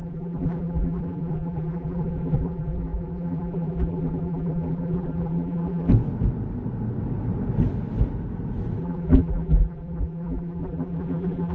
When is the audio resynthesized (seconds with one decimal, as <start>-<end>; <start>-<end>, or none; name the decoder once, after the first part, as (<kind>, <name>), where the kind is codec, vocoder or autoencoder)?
0.0-5.9 (vocoder, BigVGAN v2); 8.8-11.5